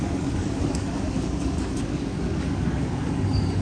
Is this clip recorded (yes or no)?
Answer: no